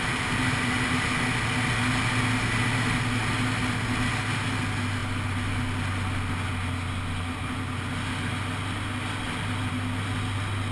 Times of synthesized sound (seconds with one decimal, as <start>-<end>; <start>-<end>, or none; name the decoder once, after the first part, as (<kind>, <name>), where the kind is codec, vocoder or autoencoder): none